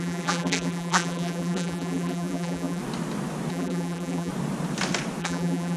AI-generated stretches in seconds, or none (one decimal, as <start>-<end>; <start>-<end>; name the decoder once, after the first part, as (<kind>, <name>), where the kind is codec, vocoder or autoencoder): 0.0-2.8 (vocoder, BigVGAN v2); 3.5-4.3; 5.2-5.8